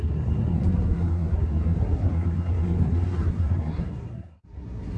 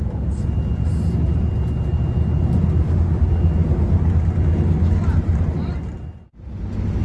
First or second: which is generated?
first